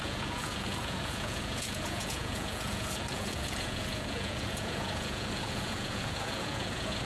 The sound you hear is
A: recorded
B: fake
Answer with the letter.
B